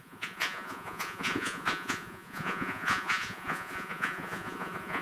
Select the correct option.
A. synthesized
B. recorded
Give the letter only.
A